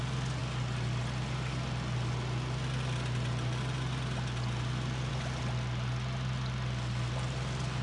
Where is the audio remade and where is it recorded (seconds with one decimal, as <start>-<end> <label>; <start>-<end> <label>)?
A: 0.0-7.8 recorded